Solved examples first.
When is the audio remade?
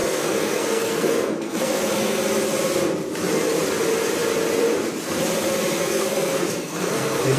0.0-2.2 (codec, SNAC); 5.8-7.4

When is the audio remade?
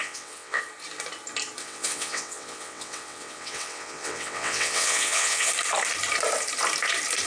0.0-0.6 (vocoder, WaveNeXt); 1.6-5.5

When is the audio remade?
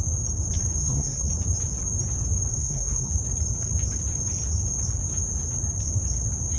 0.8-1.3 (codec, SNAC); 2.5-3.1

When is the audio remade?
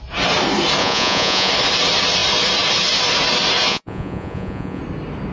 0.8-1.5 (vocoder, Vocos); 3.7-4.8